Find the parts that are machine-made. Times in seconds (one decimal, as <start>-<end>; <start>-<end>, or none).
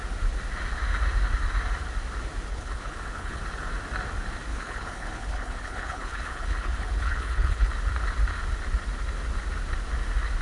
2.5-3.4; 4.5-7.7